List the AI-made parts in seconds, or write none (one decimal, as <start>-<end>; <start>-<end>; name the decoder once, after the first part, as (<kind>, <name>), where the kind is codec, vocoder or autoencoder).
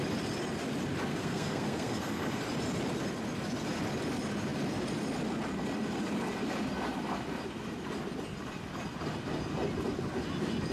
1.1-2.4 (codec, SNAC)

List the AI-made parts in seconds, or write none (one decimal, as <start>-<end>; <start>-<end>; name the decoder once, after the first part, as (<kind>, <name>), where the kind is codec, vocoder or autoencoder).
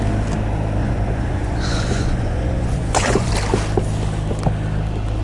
0.8-3.3 (vocoder, Vocos)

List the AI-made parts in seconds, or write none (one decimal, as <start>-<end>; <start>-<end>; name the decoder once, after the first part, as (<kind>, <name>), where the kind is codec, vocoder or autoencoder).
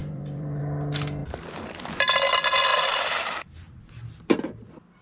0.0-0.6 (vocoder, BigVGAN v2); 1.2-1.9; 2.7-3.8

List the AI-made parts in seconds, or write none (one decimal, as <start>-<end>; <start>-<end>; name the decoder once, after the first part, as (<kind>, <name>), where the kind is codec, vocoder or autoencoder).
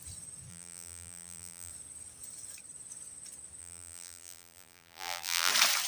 0.5-1.7 (vocoder, BigVGAN v2); 3.6-5.5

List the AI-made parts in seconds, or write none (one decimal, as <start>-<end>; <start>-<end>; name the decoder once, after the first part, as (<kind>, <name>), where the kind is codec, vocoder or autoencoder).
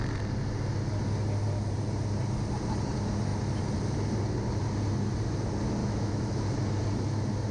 5.8-6.4 (autoencoder, DAC-VAE)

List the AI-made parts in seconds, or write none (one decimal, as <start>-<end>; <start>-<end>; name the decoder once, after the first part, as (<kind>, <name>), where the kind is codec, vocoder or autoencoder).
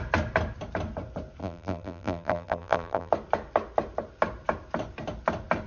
1.4-3.1 (vocoder, BigVGAN v2)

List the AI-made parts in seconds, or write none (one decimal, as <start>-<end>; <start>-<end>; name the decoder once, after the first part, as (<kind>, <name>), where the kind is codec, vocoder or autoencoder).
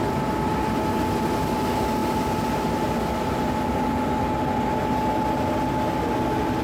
none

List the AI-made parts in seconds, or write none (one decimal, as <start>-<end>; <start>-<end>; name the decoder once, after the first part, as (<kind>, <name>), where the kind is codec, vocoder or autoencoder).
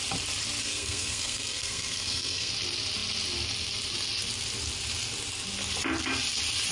0.6-2.5 (codec, SNAC)